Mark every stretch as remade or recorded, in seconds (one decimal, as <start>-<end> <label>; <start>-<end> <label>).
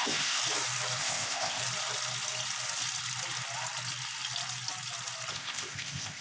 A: 0.0-0.4 remade; 0.4-1.0 recorded; 1.0-1.6 remade; 1.6-5.3 recorded; 5.3-6.2 remade